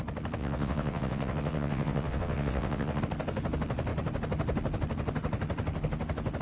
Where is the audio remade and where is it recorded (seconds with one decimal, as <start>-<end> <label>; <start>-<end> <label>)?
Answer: 0.0-0.4 recorded; 0.4-3.0 remade; 3.0-6.4 recorded